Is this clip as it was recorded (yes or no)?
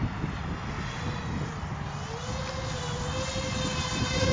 yes